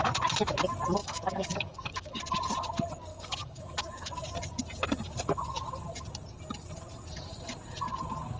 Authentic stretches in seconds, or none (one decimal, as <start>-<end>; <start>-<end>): 0.0-1.0; 2.2-3.1; 4.1-8.4

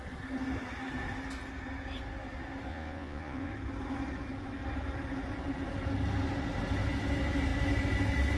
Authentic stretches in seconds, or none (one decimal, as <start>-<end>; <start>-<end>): 0.0-2.7; 3.5-8.4

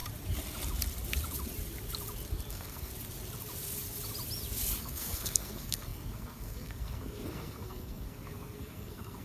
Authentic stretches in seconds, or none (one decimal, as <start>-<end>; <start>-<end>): 0.0-2.5; 2.9-4.8

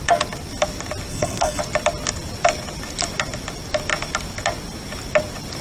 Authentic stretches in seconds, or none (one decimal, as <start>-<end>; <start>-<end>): 0.0-1.1; 1.6-5.6

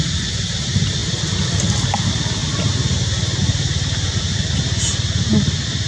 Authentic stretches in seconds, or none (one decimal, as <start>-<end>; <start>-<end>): 0.0-2.4; 4.4-5.9

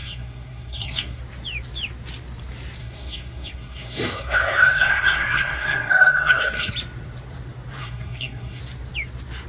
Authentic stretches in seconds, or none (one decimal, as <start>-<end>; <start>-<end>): 1.2-2.8; 6.7-7.8; 8.6-9.5

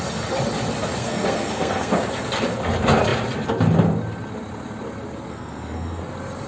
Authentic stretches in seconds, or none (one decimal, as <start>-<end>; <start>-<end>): 0.0-1.0; 1.9-5.3; 6.0-6.5

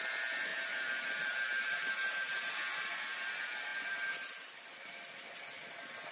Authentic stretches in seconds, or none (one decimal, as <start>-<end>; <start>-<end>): 0.0-0.5; 2.4-6.1